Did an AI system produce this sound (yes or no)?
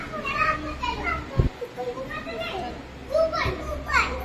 no